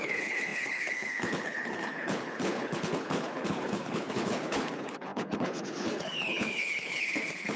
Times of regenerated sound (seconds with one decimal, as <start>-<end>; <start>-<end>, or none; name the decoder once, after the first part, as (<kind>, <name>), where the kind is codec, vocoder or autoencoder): 0.0-7.6 (codec, HILCodec)